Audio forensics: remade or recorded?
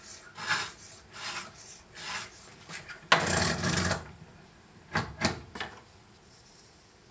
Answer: recorded